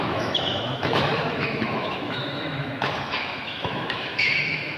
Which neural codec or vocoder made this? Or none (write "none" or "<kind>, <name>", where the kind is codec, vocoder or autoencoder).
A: autoencoder, DAC-VAE